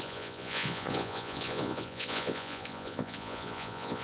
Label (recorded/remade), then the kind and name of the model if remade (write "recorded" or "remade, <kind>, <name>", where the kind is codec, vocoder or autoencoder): remade, vocoder, Vocos